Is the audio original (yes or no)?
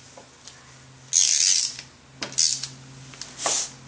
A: yes